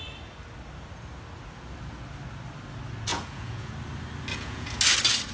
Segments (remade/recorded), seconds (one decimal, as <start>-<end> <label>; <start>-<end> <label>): 0.0-3.1 recorded; 3.1-3.7 remade; 3.7-4.3 recorded; 4.3-4.8 remade; 4.8-5.3 recorded